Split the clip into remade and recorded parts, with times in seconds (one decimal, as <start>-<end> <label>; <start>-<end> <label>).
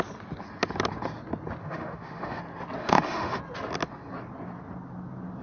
0.0-1.6 recorded; 1.6-2.4 remade; 2.4-2.8 recorded; 2.8-3.4 remade; 3.4-5.4 recorded